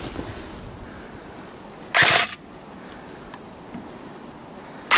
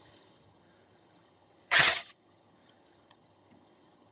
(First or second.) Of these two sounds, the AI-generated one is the second